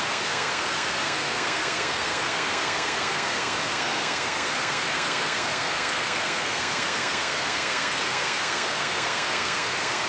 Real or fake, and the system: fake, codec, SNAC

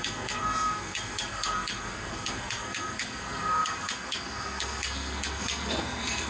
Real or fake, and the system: fake, codec, SNAC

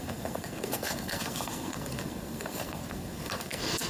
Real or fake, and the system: fake, codec, SNAC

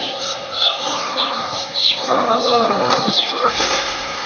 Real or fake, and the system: fake, codec, SNAC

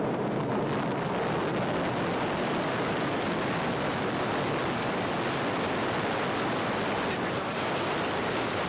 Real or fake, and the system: real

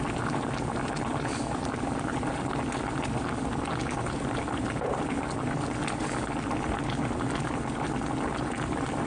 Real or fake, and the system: real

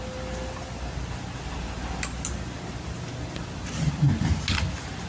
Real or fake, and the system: real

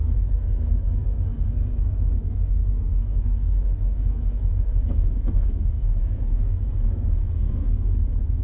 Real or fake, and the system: fake, codec, SNAC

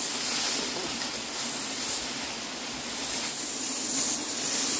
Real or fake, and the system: real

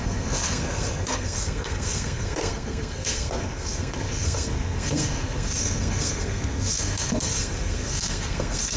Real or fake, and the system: fake, codec, SNAC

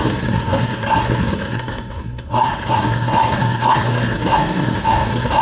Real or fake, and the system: fake, codec, SNAC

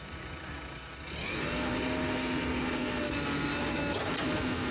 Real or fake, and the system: real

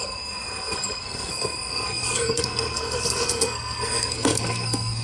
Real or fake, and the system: fake, codec, SNAC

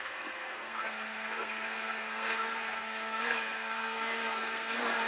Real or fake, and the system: fake, codec, SNAC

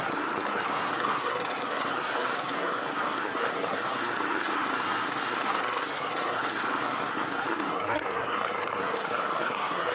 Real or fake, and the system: fake, codec, SNAC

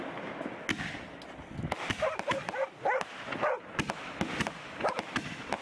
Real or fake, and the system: real